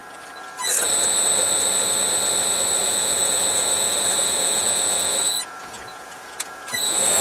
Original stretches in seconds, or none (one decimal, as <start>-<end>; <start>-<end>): 0.0-2.8